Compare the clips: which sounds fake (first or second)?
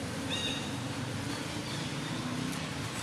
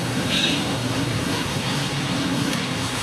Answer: second